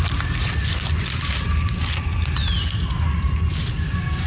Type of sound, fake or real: real